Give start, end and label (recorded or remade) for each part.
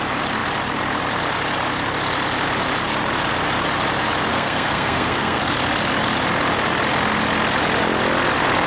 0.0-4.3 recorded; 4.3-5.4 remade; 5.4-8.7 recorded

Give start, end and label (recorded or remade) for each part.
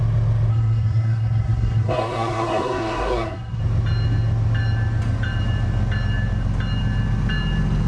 0.0-0.5 recorded; 0.5-3.6 remade; 3.6-7.9 recorded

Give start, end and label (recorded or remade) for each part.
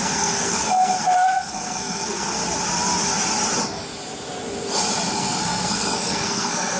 0.0-2.4 remade; 2.4-5.1 recorded; 5.1-6.8 remade